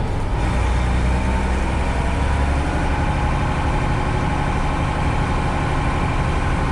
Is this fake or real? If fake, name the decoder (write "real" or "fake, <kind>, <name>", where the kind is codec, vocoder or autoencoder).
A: real